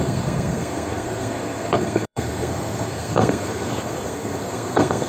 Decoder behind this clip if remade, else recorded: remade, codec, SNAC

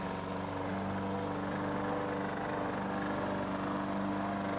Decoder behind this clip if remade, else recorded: recorded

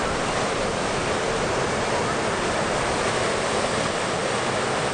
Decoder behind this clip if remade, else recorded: recorded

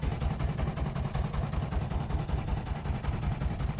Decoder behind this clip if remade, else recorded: recorded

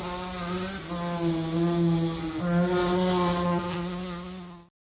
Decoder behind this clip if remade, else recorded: recorded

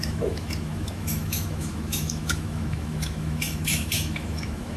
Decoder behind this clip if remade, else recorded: remade, autoencoder, DAC-VAE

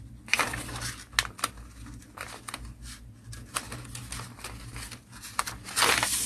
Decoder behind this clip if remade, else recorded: recorded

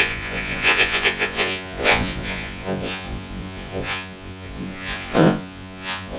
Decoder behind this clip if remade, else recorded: remade, vocoder, Vocos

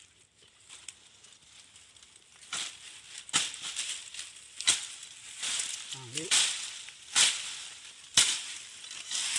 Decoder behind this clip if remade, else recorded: recorded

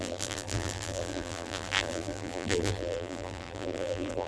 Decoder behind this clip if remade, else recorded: remade, vocoder, BigVGAN v2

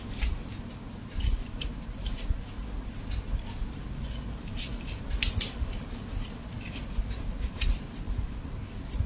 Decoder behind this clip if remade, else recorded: recorded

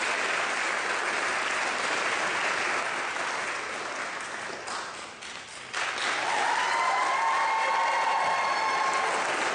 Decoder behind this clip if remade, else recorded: recorded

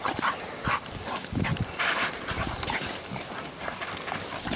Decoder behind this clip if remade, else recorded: recorded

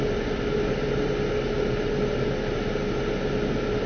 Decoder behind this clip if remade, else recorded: recorded